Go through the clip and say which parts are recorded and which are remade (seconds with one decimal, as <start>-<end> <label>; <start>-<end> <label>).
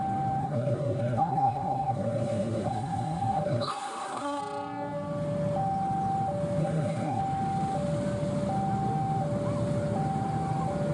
0.0-0.4 recorded; 0.4-4.4 remade; 4.4-6.6 recorded; 6.6-7.2 remade; 7.2-10.9 recorded